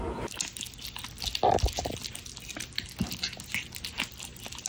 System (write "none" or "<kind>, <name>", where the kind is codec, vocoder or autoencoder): none